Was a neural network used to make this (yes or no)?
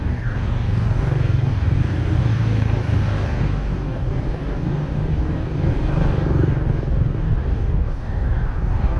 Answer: yes